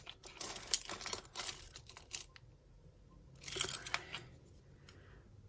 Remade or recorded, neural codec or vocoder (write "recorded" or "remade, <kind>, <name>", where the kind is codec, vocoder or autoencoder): recorded